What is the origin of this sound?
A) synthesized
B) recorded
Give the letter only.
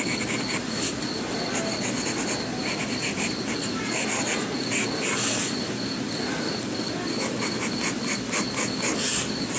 B